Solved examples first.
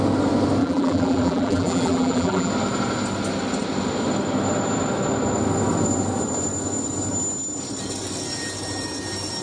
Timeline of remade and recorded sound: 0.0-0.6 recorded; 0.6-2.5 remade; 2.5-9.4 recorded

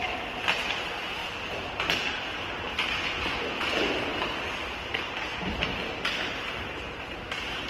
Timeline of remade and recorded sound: 0.0-4.1 remade; 4.1-4.7 recorded; 4.7-7.7 remade

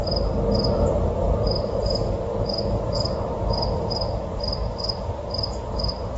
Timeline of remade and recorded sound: 0.0-6.2 recorded